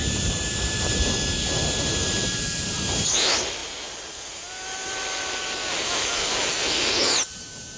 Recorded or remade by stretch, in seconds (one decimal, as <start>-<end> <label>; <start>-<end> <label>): 0.0-3.6 remade; 3.6-7.8 recorded